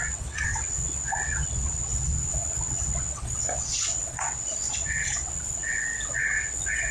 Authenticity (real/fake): fake